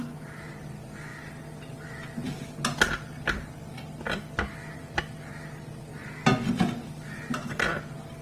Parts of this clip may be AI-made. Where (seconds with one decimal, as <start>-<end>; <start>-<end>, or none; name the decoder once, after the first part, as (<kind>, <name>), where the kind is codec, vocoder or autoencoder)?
none